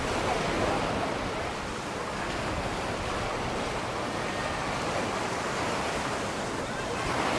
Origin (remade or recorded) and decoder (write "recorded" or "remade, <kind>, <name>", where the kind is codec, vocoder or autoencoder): recorded